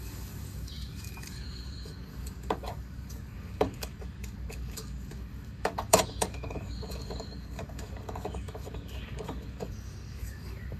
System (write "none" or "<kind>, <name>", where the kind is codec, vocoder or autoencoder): codec, DAC